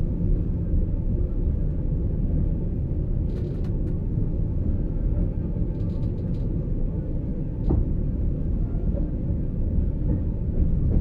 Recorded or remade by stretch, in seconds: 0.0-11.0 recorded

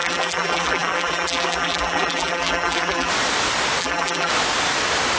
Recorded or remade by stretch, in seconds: 0.0-3.1 remade; 3.1-3.8 recorded; 3.8-4.3 remade; 4.3-5.2 recorded

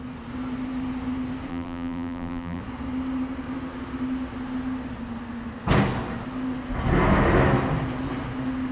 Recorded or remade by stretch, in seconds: 0.0-1.5 recorded; 1.5-2.6 remade; 2.6-8.7 recorded

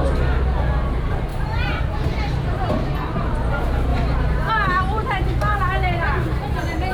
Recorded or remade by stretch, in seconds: 0.0-1.3 recorded; 1.3-2.7 remade; 2.7-3.9 recorded; 3.9-4.5 remade; 4.5-6.9 recorded

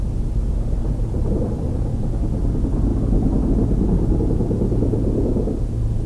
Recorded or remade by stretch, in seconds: 0.0-0.8 recorded; 0.8-1.9 remade; 1.9-6.1 recorded

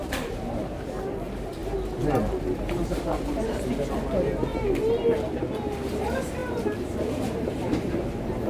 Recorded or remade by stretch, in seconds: 0.0-4.5 remade; 4.5-5.7 recorded; 5.7-8.5 remade

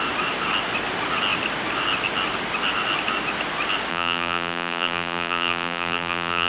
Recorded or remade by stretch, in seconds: 0.0-3.9 recorded; 3.9-6.5 remade

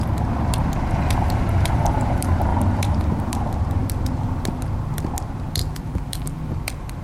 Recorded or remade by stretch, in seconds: 0.0-5.6 recorded; 5.6-6.4 remade; 6.4-7.0 recorded